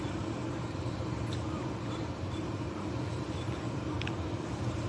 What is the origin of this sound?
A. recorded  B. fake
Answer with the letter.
B